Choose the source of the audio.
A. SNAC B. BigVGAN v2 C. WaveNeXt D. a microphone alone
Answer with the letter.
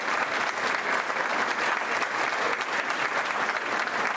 D